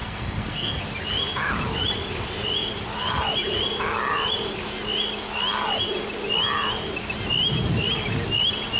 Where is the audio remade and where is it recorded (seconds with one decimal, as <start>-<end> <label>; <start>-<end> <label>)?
0.0-0.8 remade; 0.8-8.8 recorded